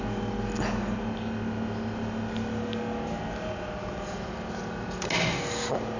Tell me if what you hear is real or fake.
real